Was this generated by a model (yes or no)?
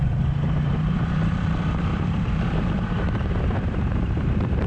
yes